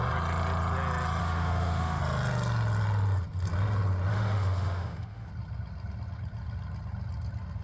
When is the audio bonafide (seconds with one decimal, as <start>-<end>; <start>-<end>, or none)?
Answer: 0.0-1.2; 2.0-4.1; 5.3-7.6